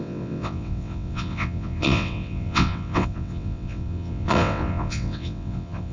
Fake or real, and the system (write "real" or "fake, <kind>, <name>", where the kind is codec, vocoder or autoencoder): fake, vocoder, WaveNeXt